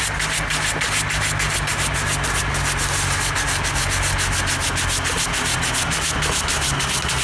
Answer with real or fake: real